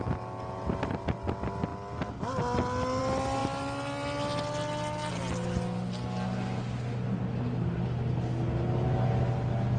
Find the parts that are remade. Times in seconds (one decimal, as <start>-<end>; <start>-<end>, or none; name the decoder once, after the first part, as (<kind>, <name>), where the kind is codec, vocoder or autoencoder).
none